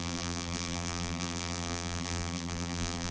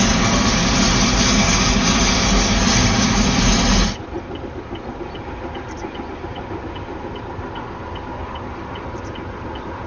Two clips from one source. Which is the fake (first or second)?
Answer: first